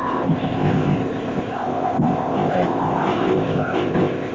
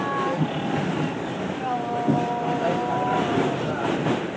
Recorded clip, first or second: second